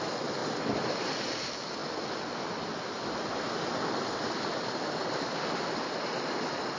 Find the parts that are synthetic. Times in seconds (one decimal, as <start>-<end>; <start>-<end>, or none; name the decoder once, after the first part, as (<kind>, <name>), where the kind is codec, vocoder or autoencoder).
none